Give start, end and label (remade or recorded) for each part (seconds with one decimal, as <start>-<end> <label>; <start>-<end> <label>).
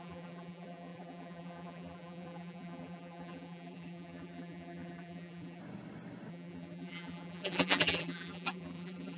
0.0-5.6 remade; 5.6-6.3 recorded; 6.3-9.2 remade